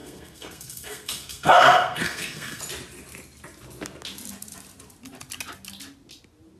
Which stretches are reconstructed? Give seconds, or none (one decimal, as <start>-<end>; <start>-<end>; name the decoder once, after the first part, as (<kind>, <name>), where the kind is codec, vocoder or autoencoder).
0.0-2.6 (codec, SNAC)